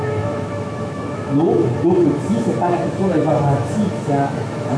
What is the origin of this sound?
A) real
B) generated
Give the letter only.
B